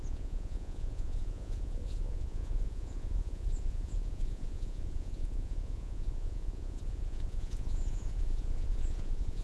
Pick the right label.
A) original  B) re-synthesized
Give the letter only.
B